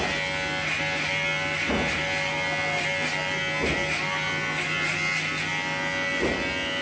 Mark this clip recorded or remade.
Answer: recorded